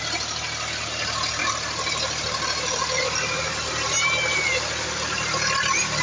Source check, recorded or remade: recorded